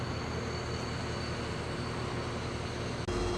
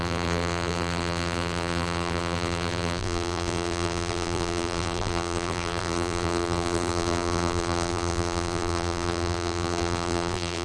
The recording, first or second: first